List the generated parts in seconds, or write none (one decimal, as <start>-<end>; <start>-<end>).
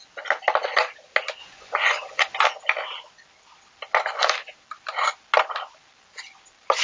1.4-2.4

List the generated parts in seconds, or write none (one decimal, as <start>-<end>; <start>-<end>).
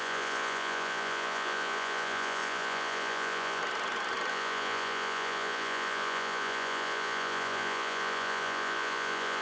0.0-3.6; 4.3-9.4